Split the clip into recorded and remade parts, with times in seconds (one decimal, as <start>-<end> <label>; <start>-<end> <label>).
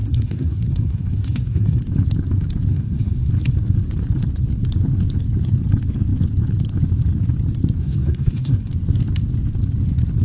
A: 0.0-1.8 remade; 1.8-2.7 recorded; 2.7-3.3 remade; 3.3-7.8 recorded; 7.8-8.7 remade; 8.7-10.2 recorded